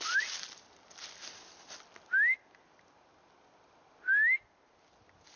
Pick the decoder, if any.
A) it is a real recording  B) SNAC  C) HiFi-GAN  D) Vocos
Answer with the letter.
A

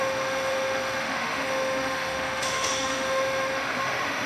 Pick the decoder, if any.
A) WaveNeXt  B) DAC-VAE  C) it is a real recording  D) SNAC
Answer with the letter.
B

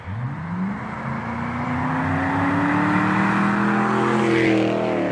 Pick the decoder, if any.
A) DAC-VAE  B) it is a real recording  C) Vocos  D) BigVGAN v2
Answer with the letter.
B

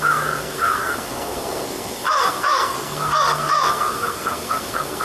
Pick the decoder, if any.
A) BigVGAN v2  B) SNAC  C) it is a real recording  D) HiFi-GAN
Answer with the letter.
B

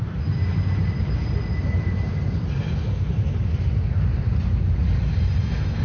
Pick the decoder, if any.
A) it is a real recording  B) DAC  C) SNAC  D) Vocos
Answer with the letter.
A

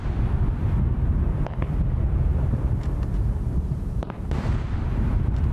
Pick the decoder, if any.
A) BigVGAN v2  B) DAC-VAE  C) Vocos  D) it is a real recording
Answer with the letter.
A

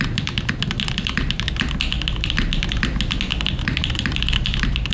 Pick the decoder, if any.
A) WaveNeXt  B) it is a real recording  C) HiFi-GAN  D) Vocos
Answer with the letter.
B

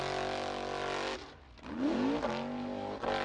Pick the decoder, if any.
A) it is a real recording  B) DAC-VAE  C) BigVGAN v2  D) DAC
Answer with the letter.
A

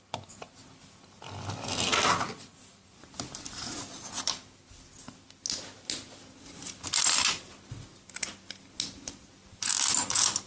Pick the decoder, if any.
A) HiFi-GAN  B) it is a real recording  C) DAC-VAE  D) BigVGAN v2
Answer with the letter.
B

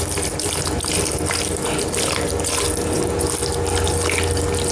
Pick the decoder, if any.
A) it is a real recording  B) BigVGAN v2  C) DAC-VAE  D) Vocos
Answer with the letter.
A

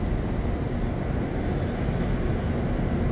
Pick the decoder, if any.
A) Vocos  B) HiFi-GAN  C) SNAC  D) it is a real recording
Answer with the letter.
D